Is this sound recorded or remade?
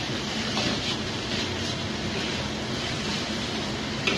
recorded